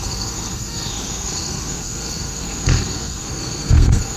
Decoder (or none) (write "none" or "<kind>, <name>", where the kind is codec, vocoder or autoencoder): codec, SNAC